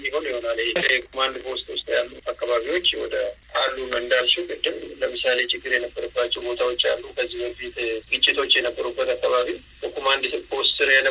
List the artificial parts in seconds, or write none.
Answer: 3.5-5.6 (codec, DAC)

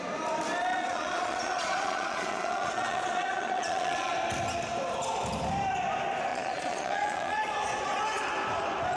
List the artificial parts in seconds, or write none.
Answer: 0.7-4.1 (vocoder, Vocos); 6.3-7.5